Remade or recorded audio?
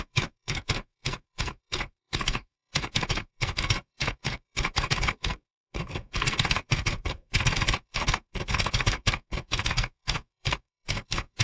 remade